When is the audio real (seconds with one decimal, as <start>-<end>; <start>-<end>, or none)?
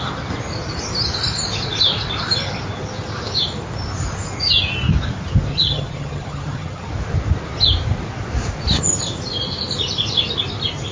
0.0-5.5; 6.9-10.9